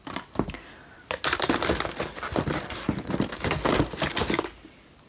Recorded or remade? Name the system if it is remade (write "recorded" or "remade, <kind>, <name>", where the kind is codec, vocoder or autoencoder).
recorded